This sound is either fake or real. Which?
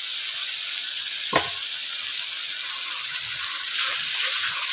real